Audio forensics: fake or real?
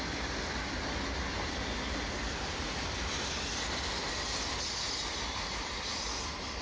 real